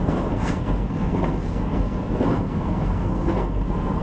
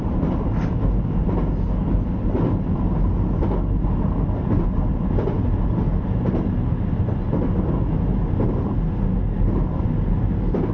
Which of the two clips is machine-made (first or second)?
first